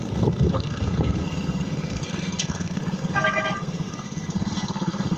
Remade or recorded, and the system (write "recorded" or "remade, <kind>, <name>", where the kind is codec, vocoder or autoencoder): remade, codec, SNAC